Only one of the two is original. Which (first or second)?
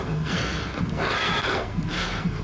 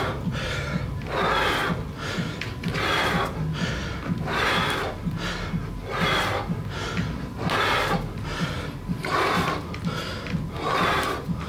second